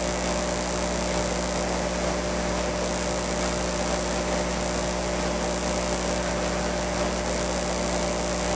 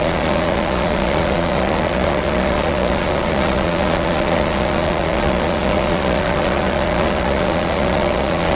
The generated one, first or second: second